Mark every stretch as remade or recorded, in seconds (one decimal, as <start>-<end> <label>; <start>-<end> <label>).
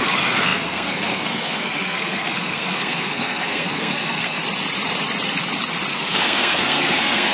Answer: 0.0-4.4 remade; 4.4-5.9 recorded; 5.9-7.3 remade